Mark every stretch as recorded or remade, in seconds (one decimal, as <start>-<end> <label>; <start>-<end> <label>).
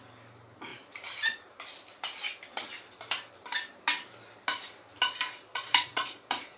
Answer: 0.0-5.5 recorded; 5.5-6.6 remade